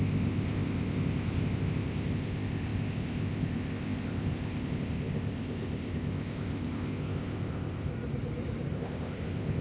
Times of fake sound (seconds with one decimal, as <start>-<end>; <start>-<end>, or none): 0.0-7.9; 8.7-9.6